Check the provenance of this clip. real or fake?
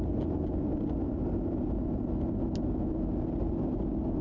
real